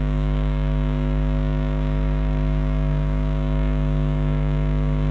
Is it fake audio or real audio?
fake